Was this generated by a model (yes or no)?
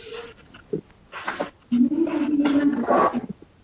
no